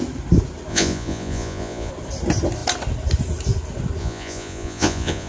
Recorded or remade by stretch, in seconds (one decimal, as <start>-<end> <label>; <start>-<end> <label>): 0.0-0.7 recorded; 0.7-1.9 remade; 1.9-4.0 recorded; 4.0-5.3 remade